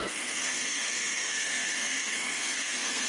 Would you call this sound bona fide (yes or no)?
no